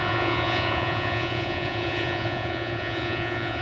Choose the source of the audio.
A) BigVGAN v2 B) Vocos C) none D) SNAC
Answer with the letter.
B